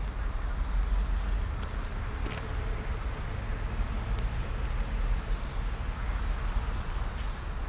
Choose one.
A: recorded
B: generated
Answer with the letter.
A